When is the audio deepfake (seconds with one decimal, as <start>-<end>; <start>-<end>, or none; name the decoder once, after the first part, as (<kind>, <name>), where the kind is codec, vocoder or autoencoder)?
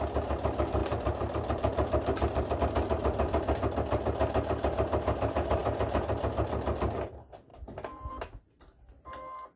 0.8-2.6 (vocoder, BigVGAN v2)